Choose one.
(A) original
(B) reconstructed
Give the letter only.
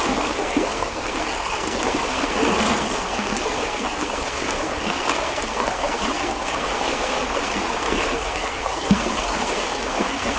B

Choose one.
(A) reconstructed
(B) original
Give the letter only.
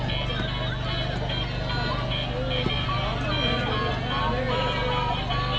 B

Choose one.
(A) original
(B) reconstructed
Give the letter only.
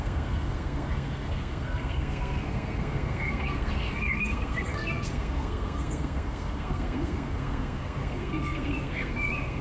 B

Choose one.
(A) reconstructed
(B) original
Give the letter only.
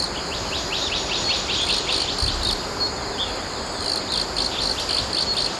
B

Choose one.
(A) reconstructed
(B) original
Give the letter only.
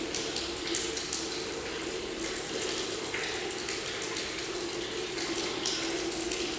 B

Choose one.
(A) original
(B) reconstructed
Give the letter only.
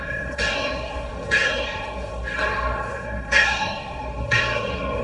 B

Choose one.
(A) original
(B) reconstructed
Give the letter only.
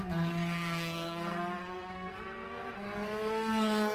B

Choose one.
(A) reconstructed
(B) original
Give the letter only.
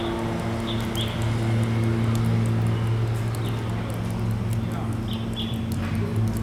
B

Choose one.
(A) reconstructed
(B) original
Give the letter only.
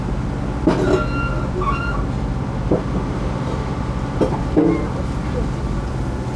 B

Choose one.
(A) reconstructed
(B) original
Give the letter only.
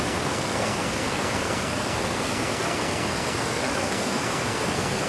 A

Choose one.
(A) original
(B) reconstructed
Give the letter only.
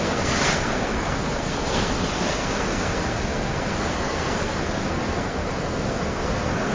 B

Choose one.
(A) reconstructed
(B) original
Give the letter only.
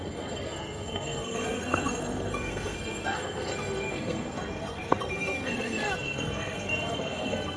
A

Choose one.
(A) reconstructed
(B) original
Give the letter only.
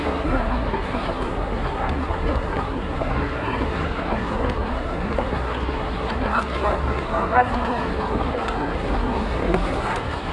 A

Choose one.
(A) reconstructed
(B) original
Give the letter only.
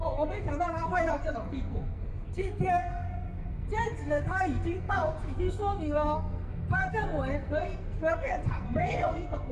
A